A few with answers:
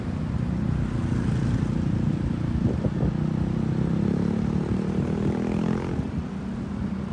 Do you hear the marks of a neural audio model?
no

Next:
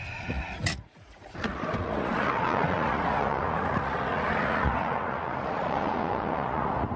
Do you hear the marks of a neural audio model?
yes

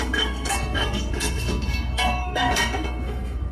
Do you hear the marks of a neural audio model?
yes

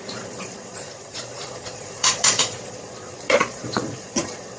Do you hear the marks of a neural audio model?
yes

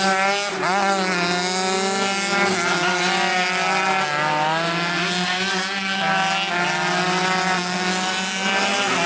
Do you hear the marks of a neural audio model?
no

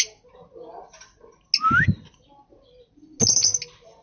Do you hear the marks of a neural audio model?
no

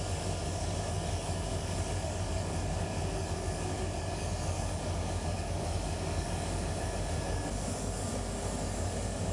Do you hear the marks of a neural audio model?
yes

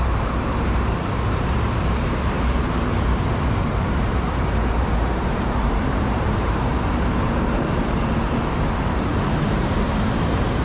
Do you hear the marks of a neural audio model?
yes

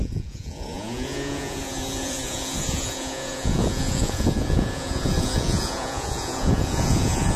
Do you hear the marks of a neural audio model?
yes